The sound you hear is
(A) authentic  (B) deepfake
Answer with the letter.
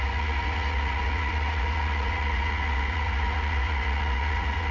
B